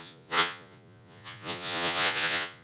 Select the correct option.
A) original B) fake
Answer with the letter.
B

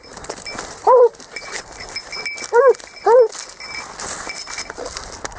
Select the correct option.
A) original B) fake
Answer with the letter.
A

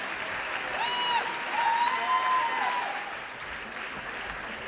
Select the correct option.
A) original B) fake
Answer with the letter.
A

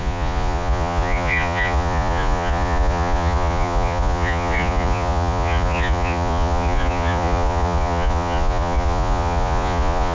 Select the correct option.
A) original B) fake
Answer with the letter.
B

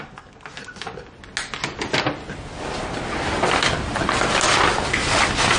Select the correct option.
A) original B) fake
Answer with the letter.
A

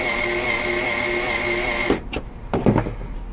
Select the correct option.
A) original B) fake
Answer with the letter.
A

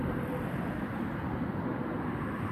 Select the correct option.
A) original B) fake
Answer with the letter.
A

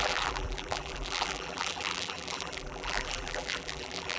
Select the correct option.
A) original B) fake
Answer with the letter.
B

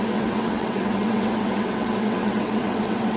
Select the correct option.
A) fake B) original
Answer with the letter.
A